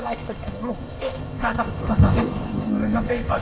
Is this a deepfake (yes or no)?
yes